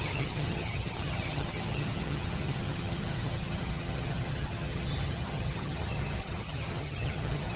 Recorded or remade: remade